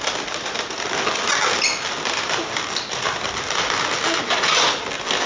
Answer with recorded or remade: recorded